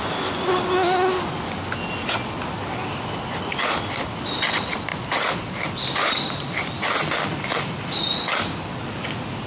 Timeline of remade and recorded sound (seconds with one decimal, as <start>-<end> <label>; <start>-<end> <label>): 0.0-9.5 recorded